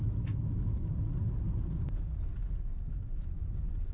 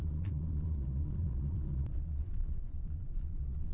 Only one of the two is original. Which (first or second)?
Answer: first